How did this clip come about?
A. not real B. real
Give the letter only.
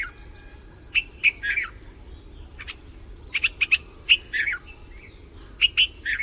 B